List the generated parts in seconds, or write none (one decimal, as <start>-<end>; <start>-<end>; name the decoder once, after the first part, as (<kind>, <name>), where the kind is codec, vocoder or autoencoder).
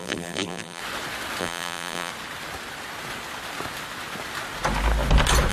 0.0-0.8 (vocoder, BigVGAN v2); 1.4-2.1